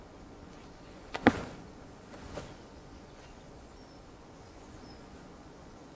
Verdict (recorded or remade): remade